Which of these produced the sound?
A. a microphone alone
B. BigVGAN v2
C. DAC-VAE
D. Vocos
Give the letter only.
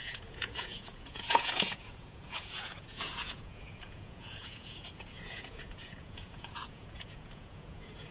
D